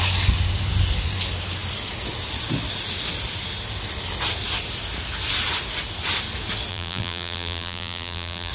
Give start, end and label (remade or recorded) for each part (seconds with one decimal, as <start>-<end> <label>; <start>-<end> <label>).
0.0-6.7 recorded; 6.7-8.5 remade